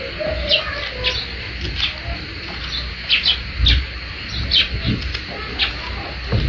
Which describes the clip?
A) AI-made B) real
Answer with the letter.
B